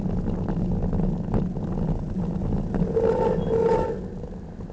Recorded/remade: recorded